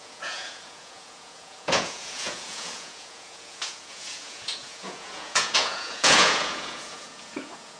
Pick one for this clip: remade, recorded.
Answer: remade